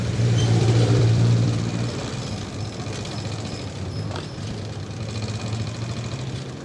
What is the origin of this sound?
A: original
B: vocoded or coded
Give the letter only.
B